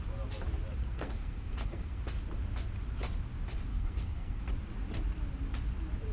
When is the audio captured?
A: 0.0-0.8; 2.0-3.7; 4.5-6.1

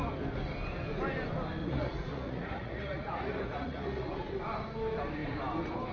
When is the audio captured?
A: 0.0-1.6; 4.4-5.9